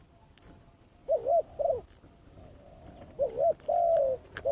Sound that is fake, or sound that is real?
real